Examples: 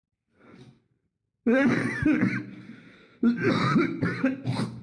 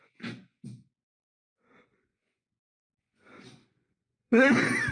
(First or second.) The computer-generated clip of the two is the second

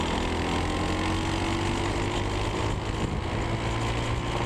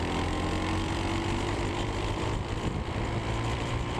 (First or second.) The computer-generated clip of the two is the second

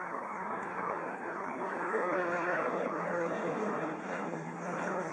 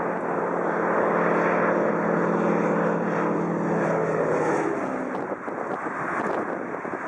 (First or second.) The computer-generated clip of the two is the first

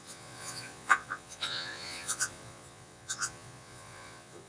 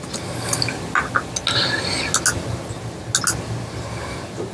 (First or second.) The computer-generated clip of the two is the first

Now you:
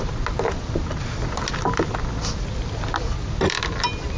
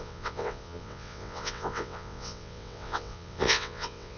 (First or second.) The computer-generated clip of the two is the second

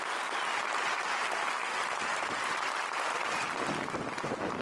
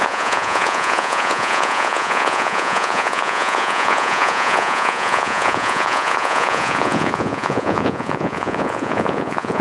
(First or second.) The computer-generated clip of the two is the second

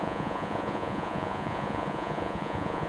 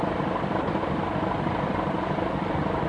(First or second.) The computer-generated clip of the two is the first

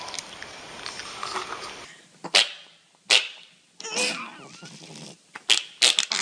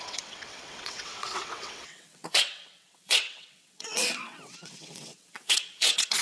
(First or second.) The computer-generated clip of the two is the second